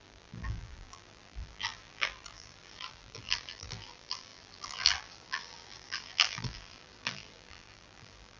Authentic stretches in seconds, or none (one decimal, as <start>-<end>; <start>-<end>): none